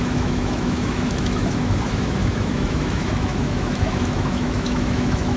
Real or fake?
fake